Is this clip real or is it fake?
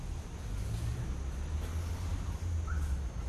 real